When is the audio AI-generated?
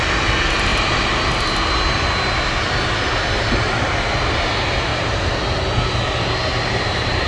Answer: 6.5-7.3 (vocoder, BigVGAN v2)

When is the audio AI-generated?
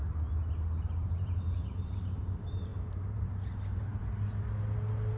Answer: 0.9-4.0 (vocoder, BigVGAN v2)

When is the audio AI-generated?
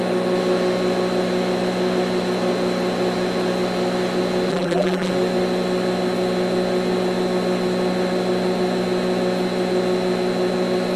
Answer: 4.5-5.1 (vocoder, BigVGAN v2)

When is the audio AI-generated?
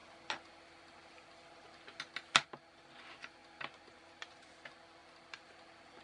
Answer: 3.4-4.5 (vocoder, BigVGAN v2)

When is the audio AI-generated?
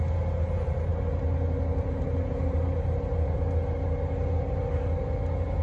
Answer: none